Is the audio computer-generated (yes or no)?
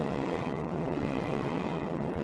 yes